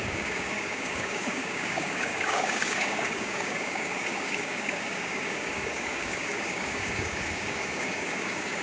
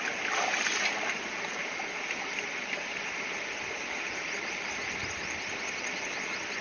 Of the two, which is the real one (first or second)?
second